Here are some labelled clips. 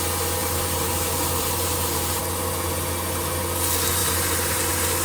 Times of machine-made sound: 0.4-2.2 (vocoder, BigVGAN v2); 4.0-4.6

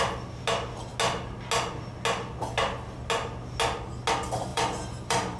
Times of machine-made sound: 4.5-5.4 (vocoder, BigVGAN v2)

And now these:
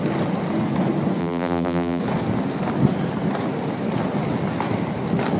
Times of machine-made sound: 1.2-2.0 (vocoder, BigVGAN v2)